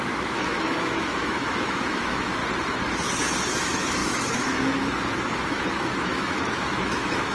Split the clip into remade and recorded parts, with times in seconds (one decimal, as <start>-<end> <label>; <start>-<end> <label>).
0.0-2.4 remade; 2.4-3.5 recorded; 3.5-7.3 remade